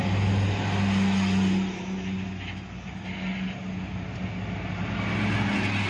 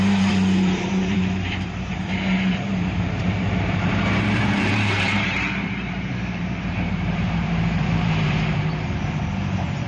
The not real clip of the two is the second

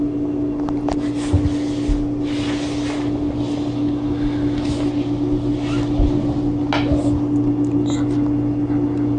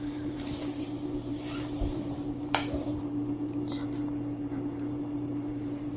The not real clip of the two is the second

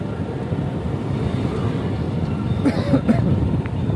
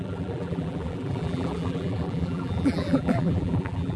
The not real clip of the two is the second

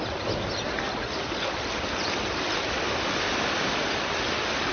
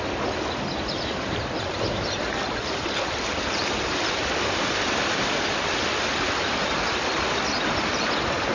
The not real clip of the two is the second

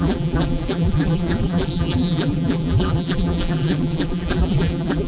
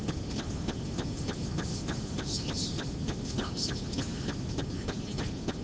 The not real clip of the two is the first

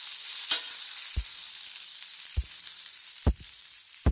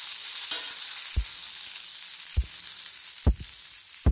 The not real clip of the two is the first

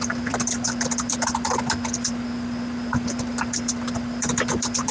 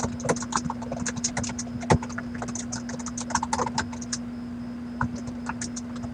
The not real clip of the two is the first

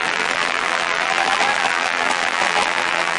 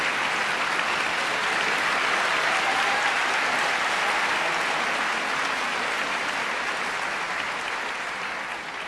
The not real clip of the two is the first